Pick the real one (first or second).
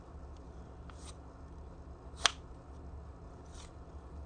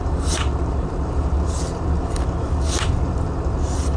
first